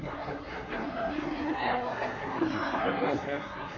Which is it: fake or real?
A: fake